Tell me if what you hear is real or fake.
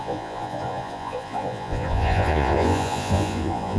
fake